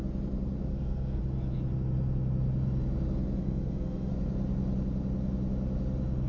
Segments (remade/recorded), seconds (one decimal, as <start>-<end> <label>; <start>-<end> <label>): 0.0-0.7 recorded; 0.7-1.2 remade; 1.2-3.4 recorded; 3.4-4.1 remade; 4.1-6.3 recorded